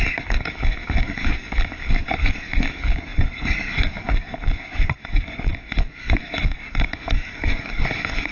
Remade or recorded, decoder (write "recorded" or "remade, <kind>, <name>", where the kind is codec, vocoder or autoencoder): remade, codec, DAC